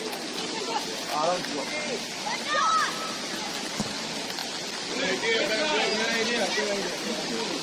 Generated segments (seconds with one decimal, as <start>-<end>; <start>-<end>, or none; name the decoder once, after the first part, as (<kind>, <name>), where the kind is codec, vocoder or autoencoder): none